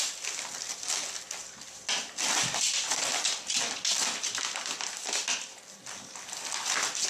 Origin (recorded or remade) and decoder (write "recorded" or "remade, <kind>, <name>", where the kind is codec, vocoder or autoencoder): recorded